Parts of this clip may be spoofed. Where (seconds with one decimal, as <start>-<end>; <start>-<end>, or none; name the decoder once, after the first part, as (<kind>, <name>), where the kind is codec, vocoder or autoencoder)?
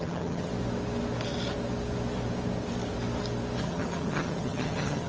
0.0-0.5 (vocoder, HiFi-GAN); 3.6-5.1